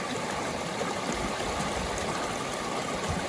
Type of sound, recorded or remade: recorded